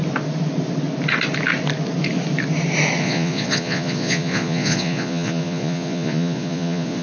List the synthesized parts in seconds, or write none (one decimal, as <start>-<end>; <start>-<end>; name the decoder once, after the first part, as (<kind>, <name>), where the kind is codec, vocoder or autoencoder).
3.0-7.0 (vocoder, Vocos)